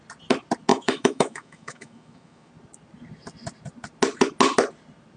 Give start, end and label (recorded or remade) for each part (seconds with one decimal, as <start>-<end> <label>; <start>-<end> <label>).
0.0-0.7 recorded; 0.7-2.5 remade; 2.5-5.2 recorded